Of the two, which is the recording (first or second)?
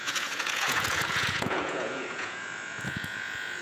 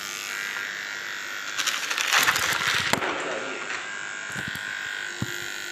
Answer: second